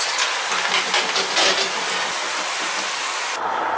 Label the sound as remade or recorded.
recorded